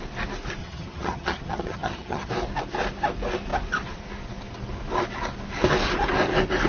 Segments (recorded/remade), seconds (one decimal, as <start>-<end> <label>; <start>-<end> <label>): 0.0-0.6 recorded; 0.6-2.3 remade; 2.3-6.7 recorded